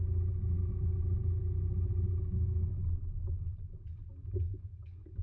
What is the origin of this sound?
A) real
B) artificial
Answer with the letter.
A